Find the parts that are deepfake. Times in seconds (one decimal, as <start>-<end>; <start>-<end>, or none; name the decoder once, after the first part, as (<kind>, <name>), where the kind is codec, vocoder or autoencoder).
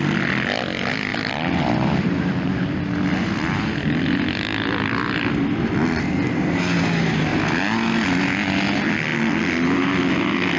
1.1-6.0 (vocoder, BigVGAN v2)